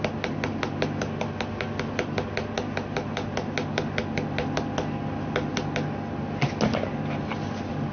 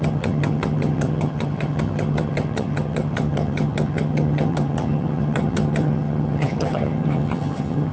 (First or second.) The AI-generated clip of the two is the second